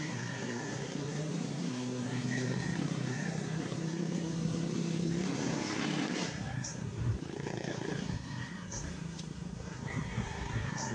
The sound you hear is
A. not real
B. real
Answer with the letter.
A